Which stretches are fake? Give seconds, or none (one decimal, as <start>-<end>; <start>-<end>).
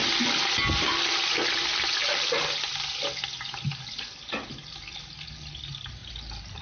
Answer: none